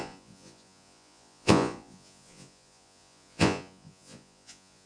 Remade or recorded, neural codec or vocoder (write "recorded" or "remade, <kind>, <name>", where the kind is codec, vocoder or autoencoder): remade, vocoder, Vocos